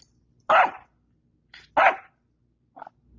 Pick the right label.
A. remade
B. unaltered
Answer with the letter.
B